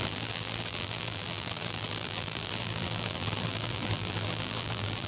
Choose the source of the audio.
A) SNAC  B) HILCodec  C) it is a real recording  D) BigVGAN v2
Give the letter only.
D